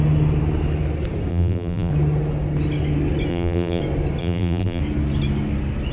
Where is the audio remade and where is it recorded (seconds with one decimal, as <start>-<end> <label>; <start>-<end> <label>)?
0.0-1.3 recorded; 1.3-1.9 remade; 1.9-3.3 recorded; 3.3-3.8 remade; 3.8-4.2 recorded; 4.2-4.8 remade; 4.8-5.9 recorded